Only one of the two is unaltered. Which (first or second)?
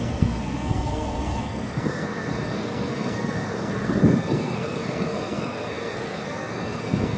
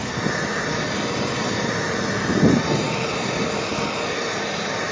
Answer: second